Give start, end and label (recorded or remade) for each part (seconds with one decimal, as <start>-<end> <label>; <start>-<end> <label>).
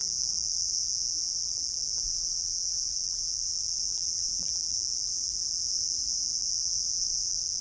0.0-7.6 remade